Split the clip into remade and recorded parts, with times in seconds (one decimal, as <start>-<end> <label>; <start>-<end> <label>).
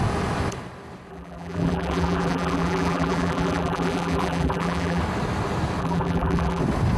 0.0-1.1 recorded; 1.1-5.0 remade; 5.0-5.8 recorded; 5.8-6.6 remade; 6.6-7.0 recorded